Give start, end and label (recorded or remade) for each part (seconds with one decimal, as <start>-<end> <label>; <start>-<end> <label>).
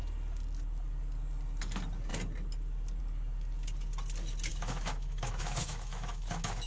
0.0-4.5 recorded; 4.5-6.7 remade